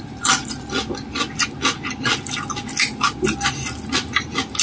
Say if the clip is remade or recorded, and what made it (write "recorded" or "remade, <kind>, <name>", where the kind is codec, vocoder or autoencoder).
recorded